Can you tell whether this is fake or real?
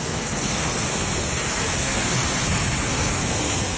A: fake